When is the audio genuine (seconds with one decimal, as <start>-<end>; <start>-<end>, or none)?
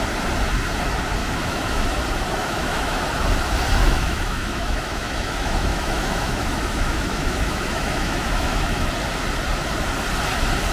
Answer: 0.0-1.2; 1.8-2.4; 3.0-3.8; 8.9-10.7